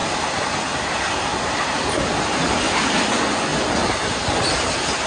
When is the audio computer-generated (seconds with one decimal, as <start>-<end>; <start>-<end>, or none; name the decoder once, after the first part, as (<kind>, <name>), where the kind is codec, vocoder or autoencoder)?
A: 3.1-3.5 (vocoder, Vocos)